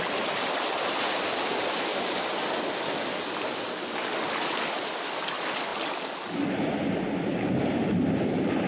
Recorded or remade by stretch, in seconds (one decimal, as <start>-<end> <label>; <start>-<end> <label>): 0.0-8.7 recorded